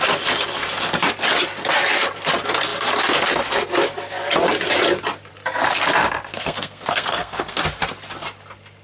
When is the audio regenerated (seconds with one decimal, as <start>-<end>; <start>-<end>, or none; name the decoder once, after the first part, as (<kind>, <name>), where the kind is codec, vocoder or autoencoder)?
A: 6.3-7.6 (codec, SNAC)